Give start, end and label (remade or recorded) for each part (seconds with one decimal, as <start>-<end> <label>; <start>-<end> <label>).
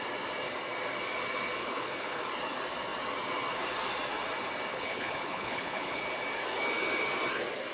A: 0.0-1.6 recorded; 1.6-2.2 remade; 2.2-4.7 recorded; 4.7-6.0 remade; 6.0-7.7 recorded